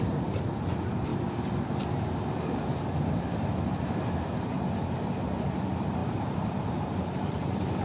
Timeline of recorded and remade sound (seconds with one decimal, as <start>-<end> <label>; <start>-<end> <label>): 0.0-1.1 remade; 1.1-4.1 recorded; 4.1-7.8 remade